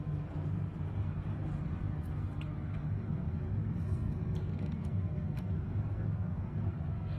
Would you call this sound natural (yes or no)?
no